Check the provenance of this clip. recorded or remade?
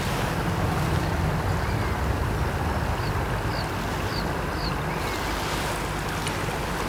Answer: recorded